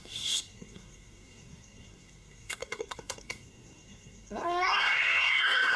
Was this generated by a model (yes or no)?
yes